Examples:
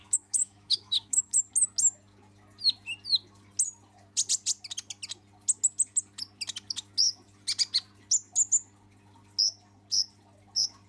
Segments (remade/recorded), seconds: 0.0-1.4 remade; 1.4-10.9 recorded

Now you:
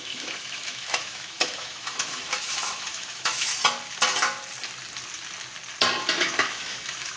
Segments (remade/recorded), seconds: 0.0-3.5 remade; 3.5-6.2 recorded; 6.2-7.2 remade

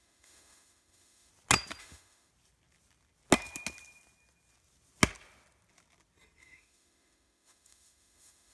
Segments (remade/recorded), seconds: 0.0-1.3 remade; 1.3-1.8 recorded; 1.8-2.3 remade; 2.3-6.4 recorded; 6.4-8.5 remade

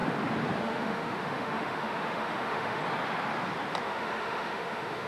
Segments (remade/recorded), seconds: 0.0-0.6 recorded; 0.6-2.8 remade; 2.8-3.8 recorded; 3.8-5.1 remade

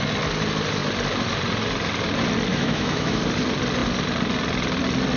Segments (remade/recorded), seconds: 0.0-2.5 recorded; 2.5-3.2 remade; 3.2-5.2 recorded